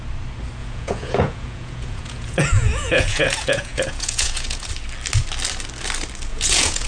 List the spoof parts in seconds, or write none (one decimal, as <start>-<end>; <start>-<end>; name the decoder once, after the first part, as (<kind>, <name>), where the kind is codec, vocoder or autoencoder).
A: 0.6-4.7 (vocoder, Vocos); 6.3-6.9